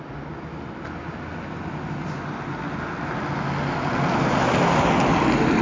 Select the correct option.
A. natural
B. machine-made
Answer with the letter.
A